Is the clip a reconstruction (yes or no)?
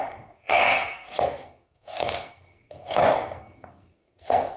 yes